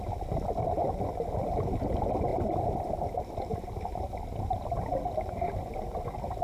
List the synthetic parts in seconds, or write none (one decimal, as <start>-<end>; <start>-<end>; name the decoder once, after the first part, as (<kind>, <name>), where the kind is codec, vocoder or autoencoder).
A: 2.3-4.8 (vocoder, BigVGAN v2)